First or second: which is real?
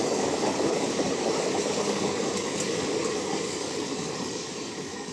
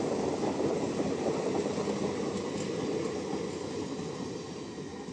second